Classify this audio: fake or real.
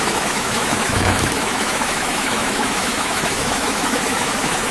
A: fake